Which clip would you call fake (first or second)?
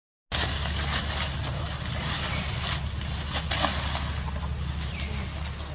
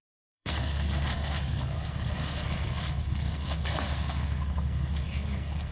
second